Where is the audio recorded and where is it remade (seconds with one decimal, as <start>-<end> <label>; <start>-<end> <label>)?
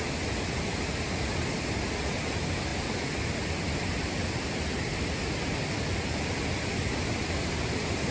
0.0-8.1 recorded